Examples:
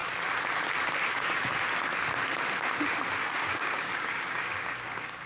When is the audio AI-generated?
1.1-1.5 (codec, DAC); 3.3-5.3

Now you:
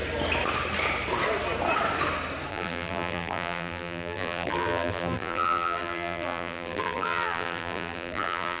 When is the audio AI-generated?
2.5-8.6 (vocoder, BigVGAN v2)

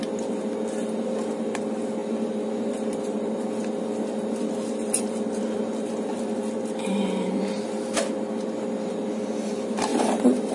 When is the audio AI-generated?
none

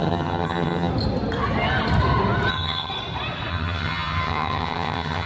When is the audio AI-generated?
0.0-0.9 (vocoder, HiFi-GAN); 2.5-2.9; 3.5-5.3